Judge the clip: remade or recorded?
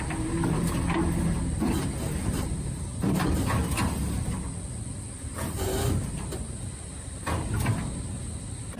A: recorded